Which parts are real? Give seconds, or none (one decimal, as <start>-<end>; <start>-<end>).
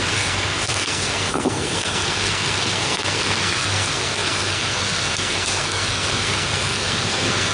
none